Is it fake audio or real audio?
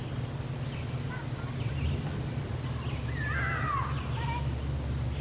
real